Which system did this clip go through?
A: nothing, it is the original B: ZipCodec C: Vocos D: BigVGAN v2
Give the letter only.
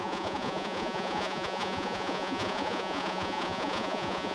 C